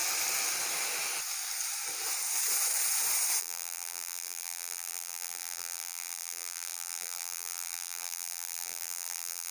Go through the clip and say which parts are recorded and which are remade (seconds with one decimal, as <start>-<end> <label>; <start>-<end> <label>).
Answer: 0.0-3.4 recorded; 3.4-9.5 remade